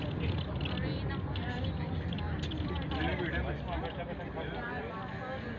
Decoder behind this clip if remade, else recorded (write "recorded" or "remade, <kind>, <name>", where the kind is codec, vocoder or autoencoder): recorded